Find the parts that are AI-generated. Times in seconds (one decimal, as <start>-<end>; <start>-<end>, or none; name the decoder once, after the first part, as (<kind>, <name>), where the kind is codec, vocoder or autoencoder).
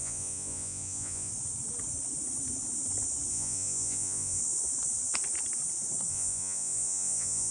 0.0-1.3 (vocoder, Vocos); 3.3-4.4; 6.1-7.5